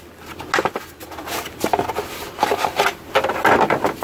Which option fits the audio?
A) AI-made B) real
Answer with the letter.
B